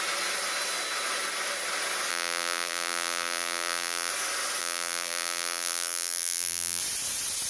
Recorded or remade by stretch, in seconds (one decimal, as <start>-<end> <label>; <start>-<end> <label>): 0.0-2.1 recorded; 2.1-4.1 remade; 4.1-4.6 recorded; 4.6-6.8 remade; 6.8-7.5 recorded